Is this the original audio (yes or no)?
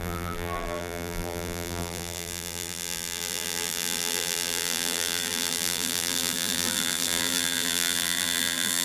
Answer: no